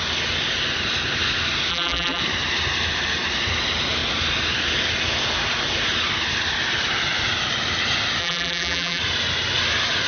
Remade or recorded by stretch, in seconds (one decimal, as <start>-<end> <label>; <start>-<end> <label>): 0.0-1.7 recorded; 1.7-2.2 remade; 2.2-8.2 recorded; 8.2-9.0 remade; 9.0-10.1 recorded